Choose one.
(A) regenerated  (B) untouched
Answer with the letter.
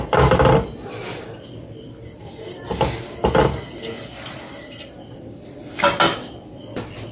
B